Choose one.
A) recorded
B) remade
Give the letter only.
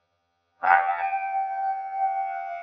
B